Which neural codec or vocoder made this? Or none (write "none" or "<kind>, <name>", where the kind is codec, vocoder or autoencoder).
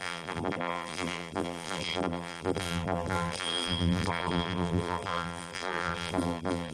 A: vocoder, BigVGAN v2